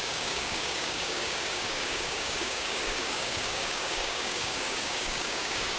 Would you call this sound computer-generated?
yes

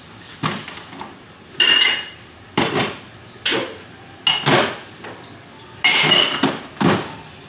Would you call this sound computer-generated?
no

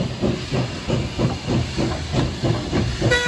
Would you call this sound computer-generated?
no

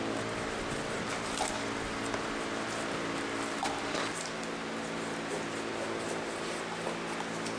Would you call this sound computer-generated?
no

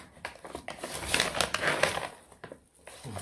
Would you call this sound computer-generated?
no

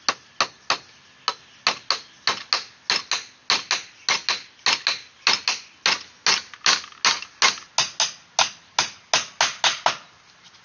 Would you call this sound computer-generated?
no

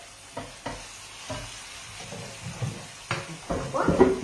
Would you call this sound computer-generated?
no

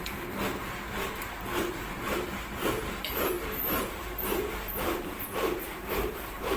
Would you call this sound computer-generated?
yes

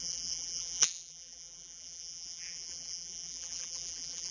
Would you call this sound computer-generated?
yes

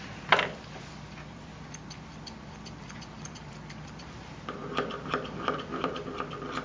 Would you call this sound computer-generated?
yes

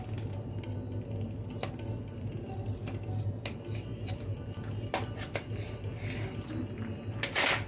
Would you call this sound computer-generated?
no